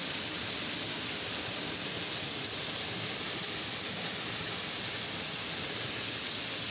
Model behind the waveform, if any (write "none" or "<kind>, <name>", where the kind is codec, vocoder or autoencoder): none